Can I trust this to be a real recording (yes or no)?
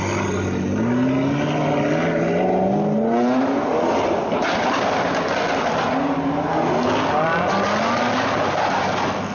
yes